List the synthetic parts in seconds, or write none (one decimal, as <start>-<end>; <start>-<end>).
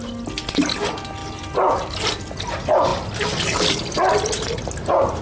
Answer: none